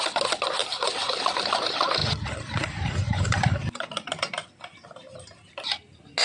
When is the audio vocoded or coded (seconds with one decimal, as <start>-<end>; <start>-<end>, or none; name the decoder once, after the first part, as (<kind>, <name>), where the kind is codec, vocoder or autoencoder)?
0.6-1.2 (vocoder, BigVGAN v2); 2.0-3.8